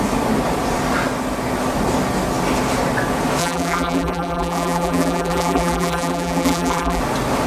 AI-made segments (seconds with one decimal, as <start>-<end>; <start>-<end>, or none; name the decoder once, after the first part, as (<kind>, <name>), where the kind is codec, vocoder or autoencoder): 3.4-7.0 (vocoder, BigVGAN v2)